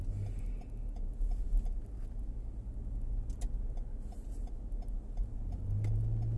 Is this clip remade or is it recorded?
recorded